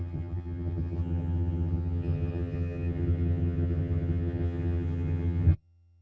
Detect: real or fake fake